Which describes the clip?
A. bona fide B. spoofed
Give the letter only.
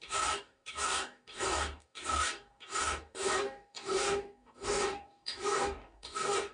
B